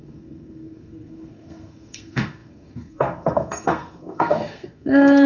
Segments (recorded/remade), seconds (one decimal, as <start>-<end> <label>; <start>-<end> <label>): 0.0-5.3 remade